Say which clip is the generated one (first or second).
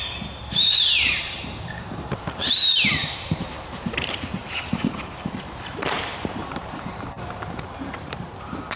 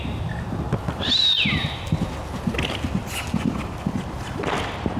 first